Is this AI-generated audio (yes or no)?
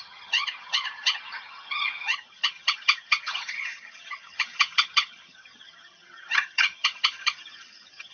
yes